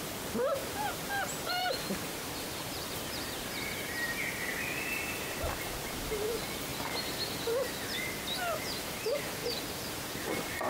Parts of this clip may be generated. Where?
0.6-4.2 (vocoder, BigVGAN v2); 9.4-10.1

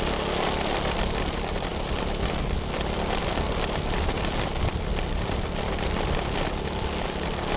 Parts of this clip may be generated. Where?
1.7-5.7 (vocoder, BigVGAN v2)